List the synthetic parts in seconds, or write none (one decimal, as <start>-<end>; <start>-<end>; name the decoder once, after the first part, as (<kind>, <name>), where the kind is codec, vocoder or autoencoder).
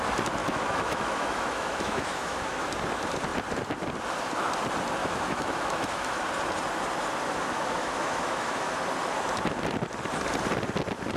0.4-2.7 (autoencoder, DAC-VAE); 5.0-6.2; 7.5-8.7